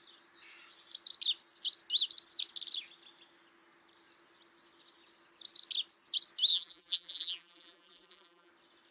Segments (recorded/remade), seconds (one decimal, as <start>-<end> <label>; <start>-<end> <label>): 0.0-6.5 recorded; 6.5-8.5 remade; 8.5-8.9 recorded